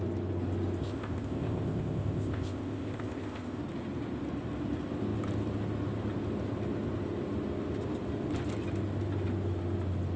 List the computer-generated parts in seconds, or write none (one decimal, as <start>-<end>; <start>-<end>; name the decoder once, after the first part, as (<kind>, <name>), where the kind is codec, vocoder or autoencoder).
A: 0.8-3.6 (codec, ZipCodec)